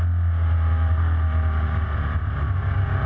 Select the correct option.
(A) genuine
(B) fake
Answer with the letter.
A